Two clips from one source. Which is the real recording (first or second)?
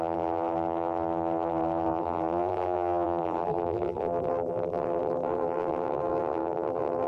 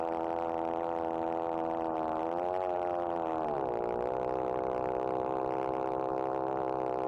second